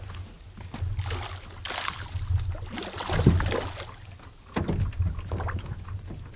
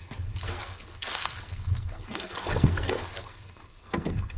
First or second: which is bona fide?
first